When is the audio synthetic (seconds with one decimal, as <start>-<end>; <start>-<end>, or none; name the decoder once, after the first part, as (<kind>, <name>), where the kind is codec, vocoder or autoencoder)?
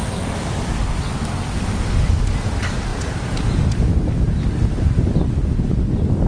none